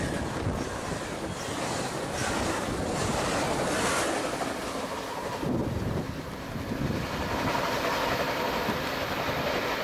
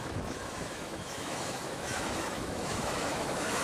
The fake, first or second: second